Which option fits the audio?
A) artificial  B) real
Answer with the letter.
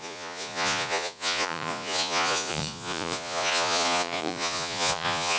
A